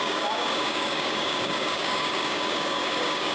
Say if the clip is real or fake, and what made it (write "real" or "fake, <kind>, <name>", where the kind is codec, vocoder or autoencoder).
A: fake, codec, DAC